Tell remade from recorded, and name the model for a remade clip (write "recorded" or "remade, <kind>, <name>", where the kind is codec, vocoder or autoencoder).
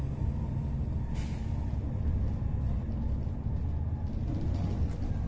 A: recorded